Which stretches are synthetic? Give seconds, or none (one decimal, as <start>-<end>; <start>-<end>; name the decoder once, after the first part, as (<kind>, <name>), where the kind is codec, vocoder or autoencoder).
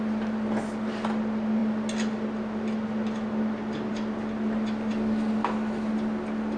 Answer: none